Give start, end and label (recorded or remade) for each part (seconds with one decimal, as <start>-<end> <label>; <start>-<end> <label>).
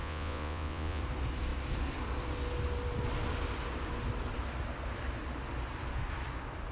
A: 0.0-1.0 remade; 1.0-6.7 recorded